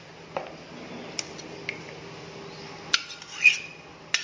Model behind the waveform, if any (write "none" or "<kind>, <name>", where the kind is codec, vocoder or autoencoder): none